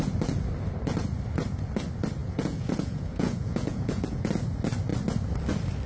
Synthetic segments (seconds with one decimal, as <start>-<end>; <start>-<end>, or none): 2.2-4.3